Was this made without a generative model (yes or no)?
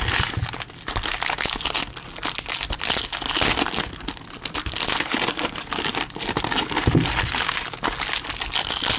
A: yes